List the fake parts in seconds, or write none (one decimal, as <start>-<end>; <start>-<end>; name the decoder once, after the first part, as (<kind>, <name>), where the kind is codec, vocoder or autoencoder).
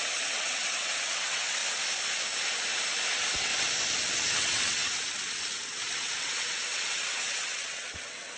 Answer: 0.0-1.6 (vocoder, WaveNeXt); 3.1-3.5; 4.3-8.4